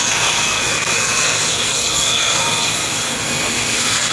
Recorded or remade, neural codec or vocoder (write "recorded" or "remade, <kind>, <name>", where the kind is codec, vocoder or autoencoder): remade, codec, SNAC